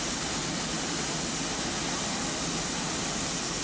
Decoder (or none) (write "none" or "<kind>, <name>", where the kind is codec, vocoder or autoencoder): none